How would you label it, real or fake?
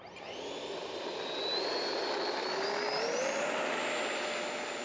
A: real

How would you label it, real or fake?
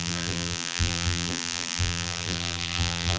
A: fake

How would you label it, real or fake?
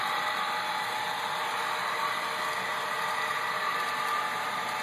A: fake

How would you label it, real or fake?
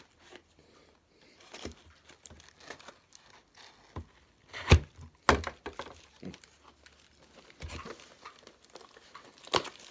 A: real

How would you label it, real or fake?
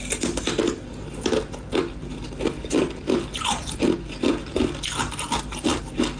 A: real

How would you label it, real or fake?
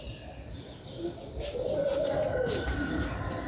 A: real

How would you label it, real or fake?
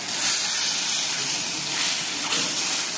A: real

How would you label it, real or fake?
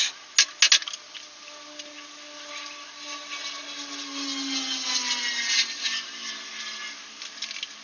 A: real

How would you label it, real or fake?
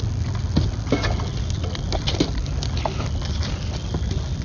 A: real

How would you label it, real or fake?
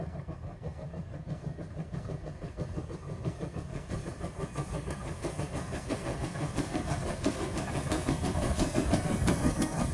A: fake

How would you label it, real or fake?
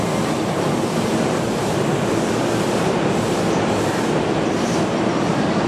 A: fake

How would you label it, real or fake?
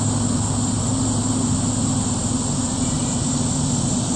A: real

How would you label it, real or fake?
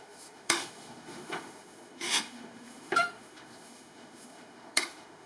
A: fake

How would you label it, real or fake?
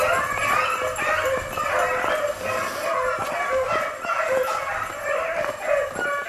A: real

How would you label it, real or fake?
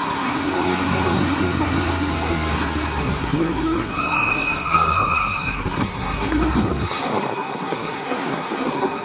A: fake